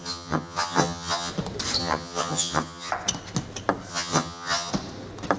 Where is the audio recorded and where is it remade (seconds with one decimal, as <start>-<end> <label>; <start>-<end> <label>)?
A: 0.0-1.3 remade; 1.3-1.8 recorded; 1.8-2.9 remade; 2.9-3.9 recorded; 3.9-4.7 remade; 4.7-5.4 recorded